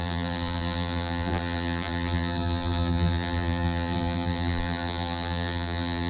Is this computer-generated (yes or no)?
yes